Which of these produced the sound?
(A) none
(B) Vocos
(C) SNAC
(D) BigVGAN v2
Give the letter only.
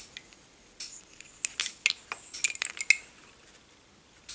A